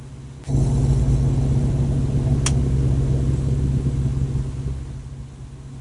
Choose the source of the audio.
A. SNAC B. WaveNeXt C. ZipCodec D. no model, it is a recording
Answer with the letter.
D